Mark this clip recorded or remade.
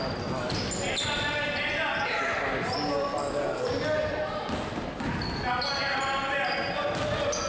recorded